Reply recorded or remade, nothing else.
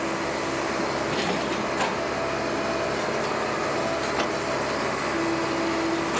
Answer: recorded